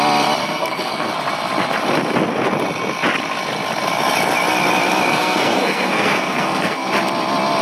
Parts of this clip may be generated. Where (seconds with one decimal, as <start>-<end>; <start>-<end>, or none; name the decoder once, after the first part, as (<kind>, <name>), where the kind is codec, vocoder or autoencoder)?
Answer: 0.4-1.1 (codec, SNAC); 5.1-6.9